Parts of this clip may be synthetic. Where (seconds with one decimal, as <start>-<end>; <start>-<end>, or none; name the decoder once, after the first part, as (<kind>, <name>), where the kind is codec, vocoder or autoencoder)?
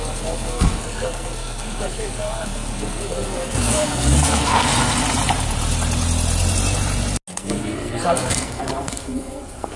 0.0-4.7 (codec, SNAC); 7.3-9.8